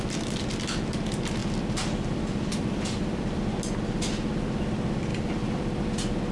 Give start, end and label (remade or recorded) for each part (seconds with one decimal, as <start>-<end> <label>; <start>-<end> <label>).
0.0-1.4 recorded; 1.4-3.4 remade; 3.4-5.1 recorded; 5.1-5.8 remade; 5.8-6.3 recorded